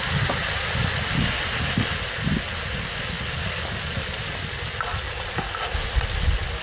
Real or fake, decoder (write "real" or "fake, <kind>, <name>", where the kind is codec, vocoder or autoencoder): real